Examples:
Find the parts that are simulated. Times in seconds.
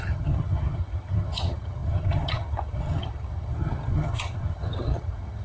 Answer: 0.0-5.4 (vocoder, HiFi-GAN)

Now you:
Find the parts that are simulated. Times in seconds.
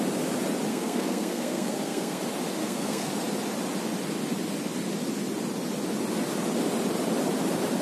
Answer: 0.7-2.2 (codec, SNAC); 2.6-3.1